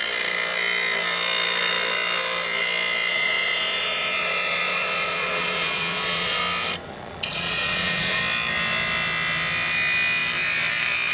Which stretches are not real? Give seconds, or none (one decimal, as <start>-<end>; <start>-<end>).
3.1-6.4; 6.9-8.2